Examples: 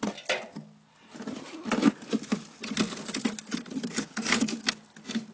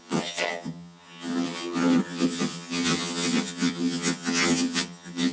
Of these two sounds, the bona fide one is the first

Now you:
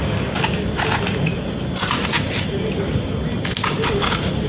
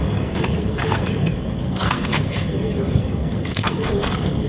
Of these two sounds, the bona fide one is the first